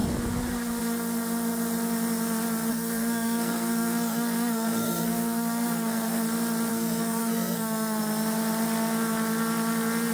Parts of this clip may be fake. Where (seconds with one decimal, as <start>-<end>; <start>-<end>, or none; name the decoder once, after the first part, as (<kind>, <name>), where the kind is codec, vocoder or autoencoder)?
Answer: 2.7-6.2 (codec, SNAC); 6.7-8.0